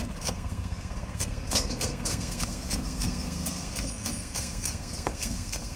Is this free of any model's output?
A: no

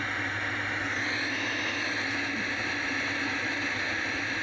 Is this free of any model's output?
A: yes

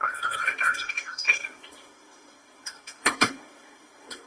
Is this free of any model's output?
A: no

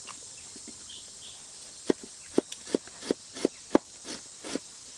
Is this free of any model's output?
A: yes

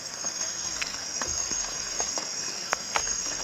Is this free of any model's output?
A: no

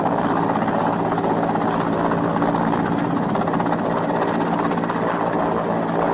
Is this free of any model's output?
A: yes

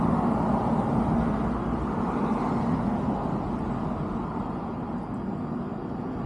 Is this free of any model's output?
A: yes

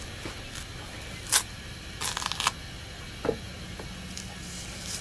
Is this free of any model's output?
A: yes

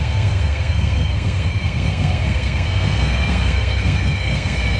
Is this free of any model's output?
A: no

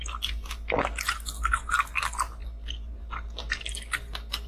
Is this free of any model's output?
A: yes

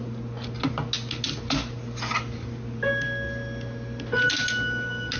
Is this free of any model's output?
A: yes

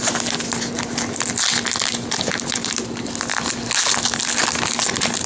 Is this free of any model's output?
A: yes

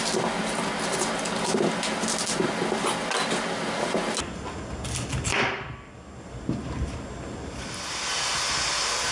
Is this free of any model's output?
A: yes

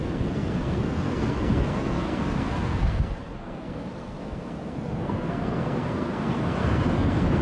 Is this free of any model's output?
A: no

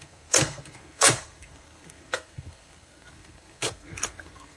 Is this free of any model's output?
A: no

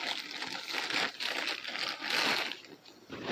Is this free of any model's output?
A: yes